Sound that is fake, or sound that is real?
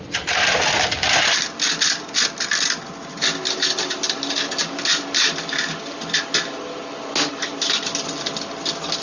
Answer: real